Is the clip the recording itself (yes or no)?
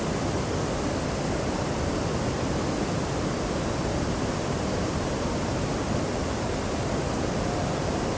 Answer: yes